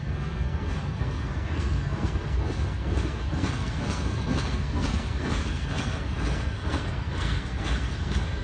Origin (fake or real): fake